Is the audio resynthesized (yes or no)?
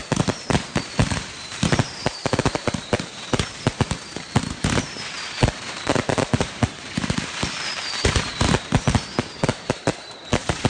yes